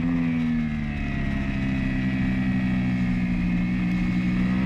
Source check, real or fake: real